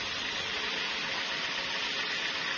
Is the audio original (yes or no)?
yes